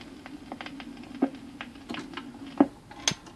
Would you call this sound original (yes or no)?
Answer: yes